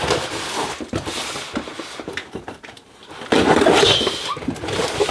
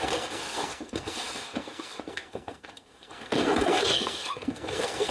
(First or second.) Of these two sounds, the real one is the first